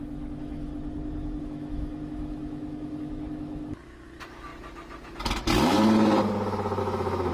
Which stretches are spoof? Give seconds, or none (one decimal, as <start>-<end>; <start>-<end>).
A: 0.0-0.7; 1.4-4.5; 6.8-7.3